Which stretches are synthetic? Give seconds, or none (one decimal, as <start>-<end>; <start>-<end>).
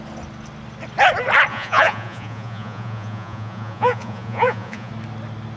1.5-4.9